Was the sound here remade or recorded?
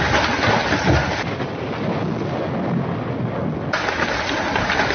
recorded